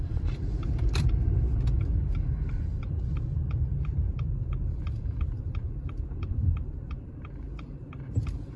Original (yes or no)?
no